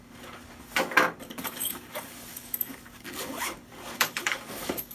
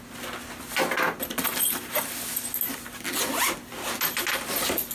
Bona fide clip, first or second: second